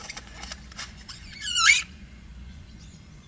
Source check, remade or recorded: remade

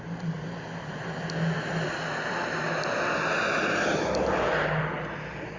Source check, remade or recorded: recorded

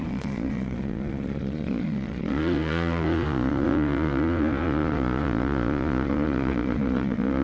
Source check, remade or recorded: remade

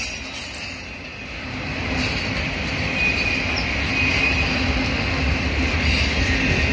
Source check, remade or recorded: recorded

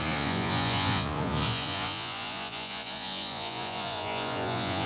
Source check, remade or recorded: remade